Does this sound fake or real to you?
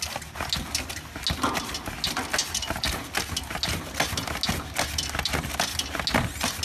real